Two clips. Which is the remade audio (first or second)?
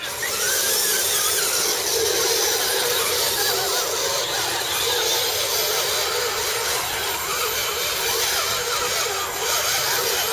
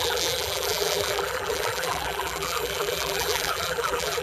second